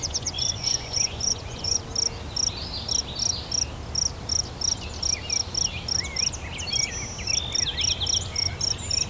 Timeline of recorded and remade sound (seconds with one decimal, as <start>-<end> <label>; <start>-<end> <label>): 0.0-1.8 remade; 1.8-9.1 recorded